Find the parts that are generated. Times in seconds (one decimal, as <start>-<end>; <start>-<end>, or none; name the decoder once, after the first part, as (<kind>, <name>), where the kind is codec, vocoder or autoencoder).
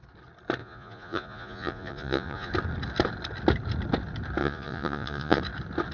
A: 0.6-2.5 (vocoder, Vocos); 4.4-5.4